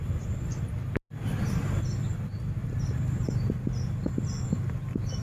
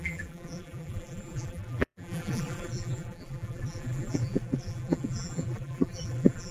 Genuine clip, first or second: first